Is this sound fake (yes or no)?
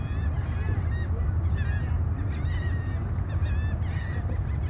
no